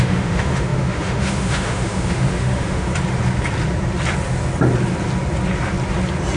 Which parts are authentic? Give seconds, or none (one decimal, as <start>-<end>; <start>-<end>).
2.9-6.4